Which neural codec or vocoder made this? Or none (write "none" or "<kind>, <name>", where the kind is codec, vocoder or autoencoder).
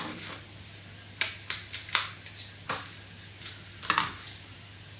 none